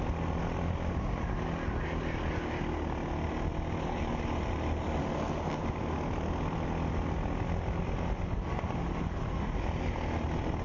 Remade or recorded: recorded